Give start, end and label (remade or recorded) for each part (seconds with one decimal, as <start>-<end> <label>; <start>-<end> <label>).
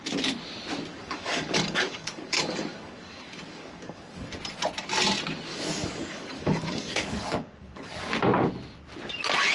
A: 0.0-0.9 recorded; 0.9-4.3 remade; 4.3-5.5 recorded; 5.5-7.9 remade; 7.9-9.5 recorded